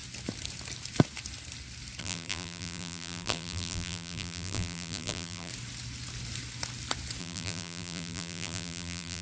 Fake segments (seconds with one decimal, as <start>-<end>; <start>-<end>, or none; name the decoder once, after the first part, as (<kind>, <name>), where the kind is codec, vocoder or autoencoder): 2.0-5.5 (vocoder, BigVGAN v2); 7.2-9.2